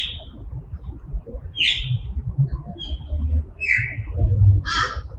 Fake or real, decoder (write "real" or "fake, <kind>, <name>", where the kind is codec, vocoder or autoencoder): real